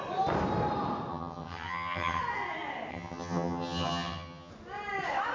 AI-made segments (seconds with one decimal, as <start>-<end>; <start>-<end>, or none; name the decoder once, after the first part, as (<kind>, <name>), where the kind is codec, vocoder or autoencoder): 1.1-2.2 (vocoder, HiFi-GAN); 2.9-4.5

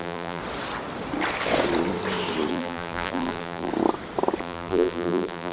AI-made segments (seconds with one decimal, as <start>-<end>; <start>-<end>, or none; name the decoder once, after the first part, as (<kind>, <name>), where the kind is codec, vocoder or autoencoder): 0.0-0.4 (vocoder, BigVGAN v2); 2.5-3.7; 4.4-5.5

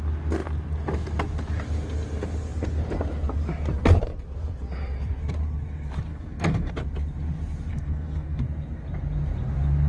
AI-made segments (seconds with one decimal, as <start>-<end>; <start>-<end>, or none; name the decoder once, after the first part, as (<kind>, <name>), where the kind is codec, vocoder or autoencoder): 6.1-6.7 (codec, SNAC); 7.7-8.4